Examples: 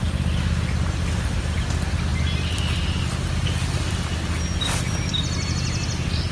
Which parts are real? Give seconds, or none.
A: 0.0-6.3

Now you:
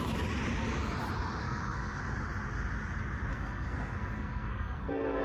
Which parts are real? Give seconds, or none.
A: 0.0-1.4; 2.0-3.3